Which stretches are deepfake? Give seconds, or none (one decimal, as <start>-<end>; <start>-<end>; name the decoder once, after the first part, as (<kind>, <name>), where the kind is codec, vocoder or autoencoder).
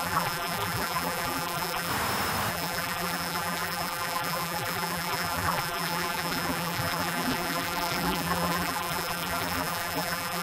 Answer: 0.0-1.9 (vocoder, BigVGAN v2); 2.5-10.4